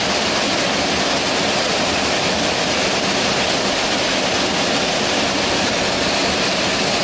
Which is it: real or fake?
real